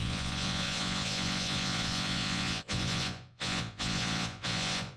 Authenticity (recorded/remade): remade